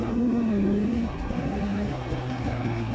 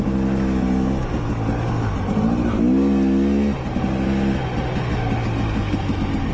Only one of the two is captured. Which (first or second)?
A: second